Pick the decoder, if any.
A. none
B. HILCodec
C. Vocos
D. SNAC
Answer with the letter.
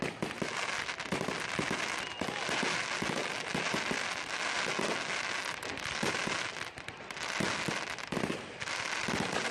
A